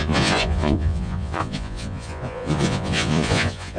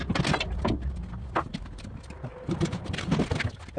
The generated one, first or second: first